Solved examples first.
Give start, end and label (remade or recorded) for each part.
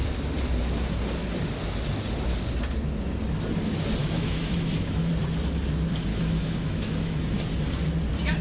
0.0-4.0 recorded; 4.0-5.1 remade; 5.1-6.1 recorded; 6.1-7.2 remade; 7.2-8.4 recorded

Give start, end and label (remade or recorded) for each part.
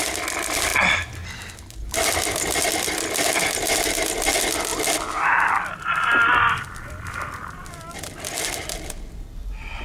0.0-9.8 recorded